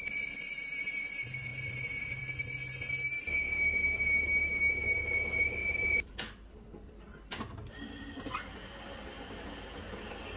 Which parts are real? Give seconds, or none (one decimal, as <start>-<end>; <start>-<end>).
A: 0.0-1.5; 2.2-5.6; 7.1-10.4